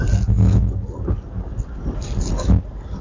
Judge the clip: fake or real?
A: real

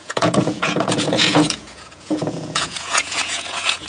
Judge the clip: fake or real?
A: fake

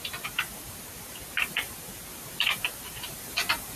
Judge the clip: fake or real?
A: fake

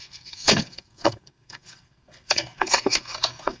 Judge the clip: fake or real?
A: fake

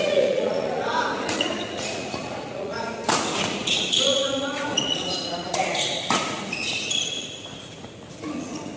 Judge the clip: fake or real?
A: fake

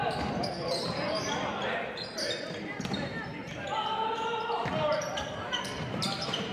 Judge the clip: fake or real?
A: fake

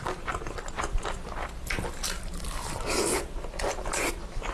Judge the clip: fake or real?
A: real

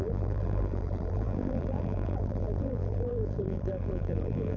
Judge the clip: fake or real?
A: fake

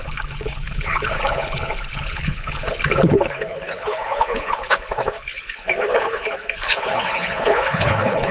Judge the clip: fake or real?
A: fake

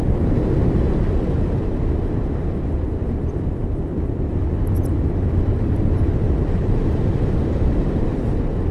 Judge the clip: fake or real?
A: real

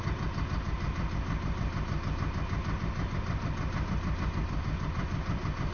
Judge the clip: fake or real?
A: real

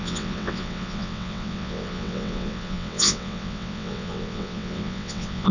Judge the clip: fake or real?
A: fake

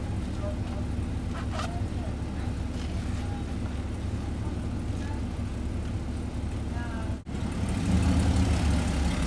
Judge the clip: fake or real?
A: real